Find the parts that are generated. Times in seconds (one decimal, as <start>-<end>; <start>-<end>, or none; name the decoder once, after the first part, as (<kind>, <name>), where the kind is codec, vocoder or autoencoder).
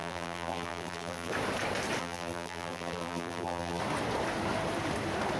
0.0-1.3 (vocoder, BigVGAN v2); 2.0-3.8